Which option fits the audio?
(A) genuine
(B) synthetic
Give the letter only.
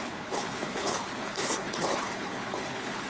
B